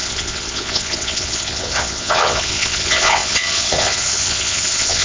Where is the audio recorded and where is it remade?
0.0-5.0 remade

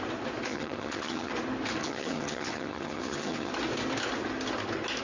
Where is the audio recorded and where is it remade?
0.0-0.5 recorded; 0.5-1.3 remade; 1.3-1.8 recorded; 1.8-3.5 remade; 3.5-5.0 recorded

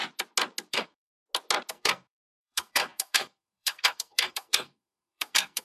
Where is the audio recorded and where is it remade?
0.0-0.7 recorded; 0.7-1.1 remade; 1.1-1.7 recorded; 1.7-5.6 remade

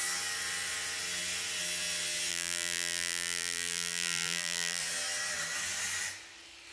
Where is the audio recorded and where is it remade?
0.0-2.3 recorded; 2.3-4.8 remade; 4.8-6.7 recorded

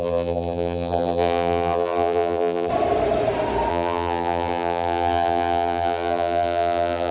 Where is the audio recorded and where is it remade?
0.0-2.7 remade; 2.7-3.7 recorded; 3.7-7.1 remade

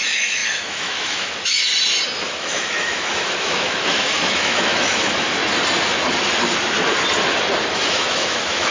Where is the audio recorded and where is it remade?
0.0-1.7 remade; 1.7-2.3 recorded; 2.3-5.4 remade; 5.4-7.7 recorded; 7.7-8.7 remade

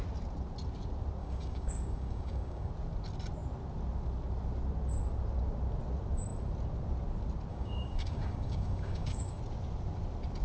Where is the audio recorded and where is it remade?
0.0-1.2 recorded; 1.2-2.7 remade; 2.7-7.5 recorded; 7.5-9.4 remade; 9.4-10.4 recorded